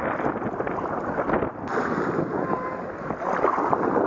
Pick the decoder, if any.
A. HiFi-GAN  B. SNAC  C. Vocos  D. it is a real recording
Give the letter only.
D